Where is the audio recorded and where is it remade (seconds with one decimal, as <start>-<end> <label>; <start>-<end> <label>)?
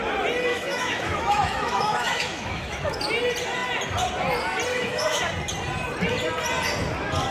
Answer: 0.0-0.5 recorded; 0.5-3.0 remade; 3.0-4.7 recorded; 4.7-5.2 remade; 5.2-7.3 recorded